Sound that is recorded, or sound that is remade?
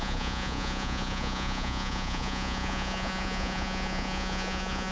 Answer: remade